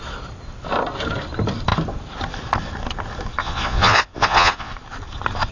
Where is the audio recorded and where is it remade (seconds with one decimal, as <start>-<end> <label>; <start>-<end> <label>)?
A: 0.0-3.4 recorded; 3.4-4.7 remade; 4.7-5.5 recorded